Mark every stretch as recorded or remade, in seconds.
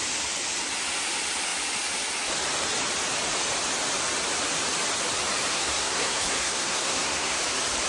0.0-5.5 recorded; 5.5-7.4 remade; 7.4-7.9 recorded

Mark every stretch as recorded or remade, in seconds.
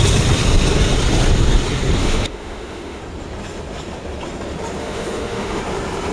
0.0-2.0 recorded; 2.0-3.0 remade; 3.0-4.8 recorded; 4.8-5.6 remade; 5.6-6.1 recorded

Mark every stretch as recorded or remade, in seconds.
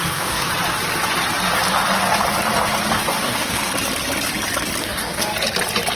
0.0-0.5 remade; 0.5-2.9 recorded; 2.9-3.7 remade; 3.7-4.8 recorded; 4.8-5.3 remade; 5.3-6.0 recorded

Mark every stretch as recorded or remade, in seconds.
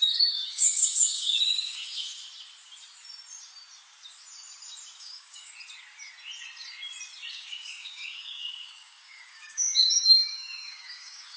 0.0-2.1 remade; 2.1-5.0 recorded; 5.0-5.5 remade; 5.5-7.3 recorded; 7.3-11.4 remade